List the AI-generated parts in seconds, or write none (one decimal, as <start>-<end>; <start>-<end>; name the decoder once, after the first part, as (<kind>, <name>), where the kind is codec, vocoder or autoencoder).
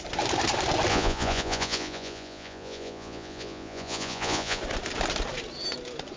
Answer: 0.9-4.6 (vocoder, Vocos)